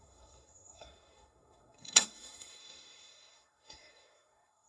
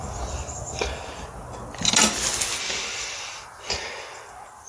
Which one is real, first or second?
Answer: second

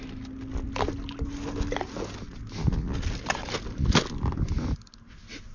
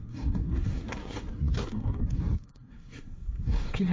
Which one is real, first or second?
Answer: first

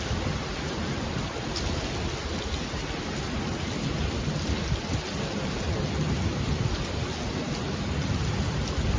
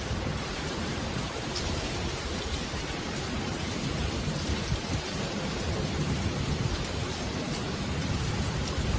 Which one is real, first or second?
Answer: first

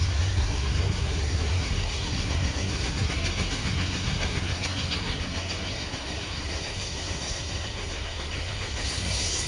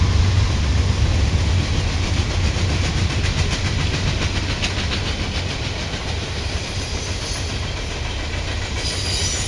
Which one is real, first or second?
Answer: second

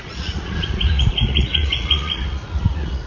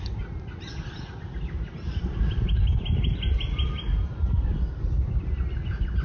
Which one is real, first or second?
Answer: second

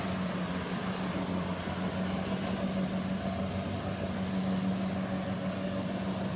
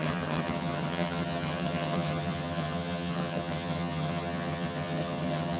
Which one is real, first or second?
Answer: first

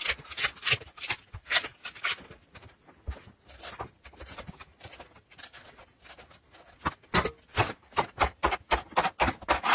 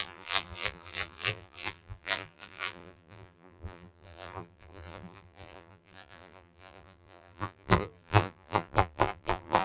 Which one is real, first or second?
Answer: first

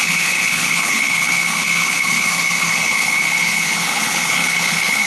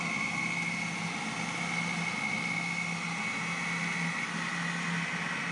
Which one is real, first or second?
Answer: second